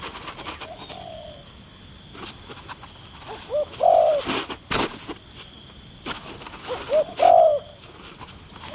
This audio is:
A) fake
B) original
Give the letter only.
B